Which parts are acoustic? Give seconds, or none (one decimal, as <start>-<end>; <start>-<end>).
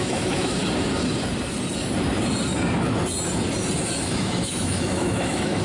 0.6-4.0